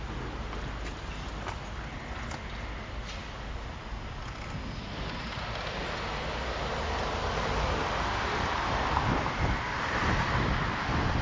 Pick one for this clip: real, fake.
real